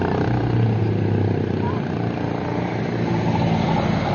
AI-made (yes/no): no